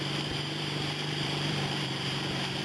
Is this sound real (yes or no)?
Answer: no